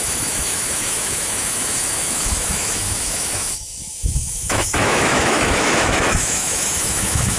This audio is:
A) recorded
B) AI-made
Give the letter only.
B